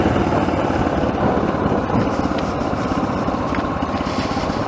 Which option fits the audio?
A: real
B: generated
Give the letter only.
B